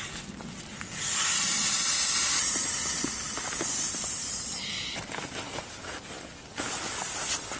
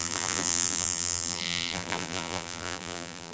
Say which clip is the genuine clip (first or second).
first